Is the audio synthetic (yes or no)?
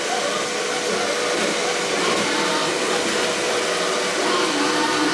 no